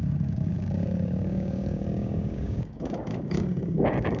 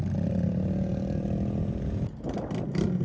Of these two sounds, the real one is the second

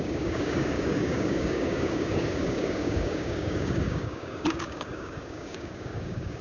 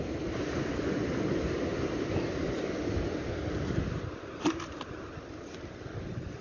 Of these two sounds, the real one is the second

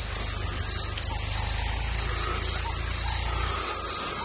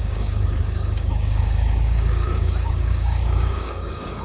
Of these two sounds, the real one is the first